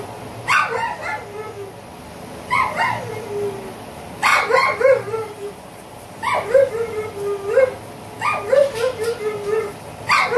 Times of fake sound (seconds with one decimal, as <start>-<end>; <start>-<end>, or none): 4.3-6.7